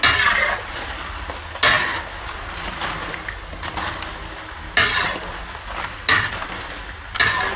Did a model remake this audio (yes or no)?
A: no